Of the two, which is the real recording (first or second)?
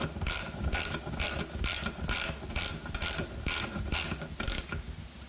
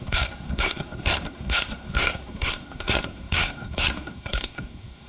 first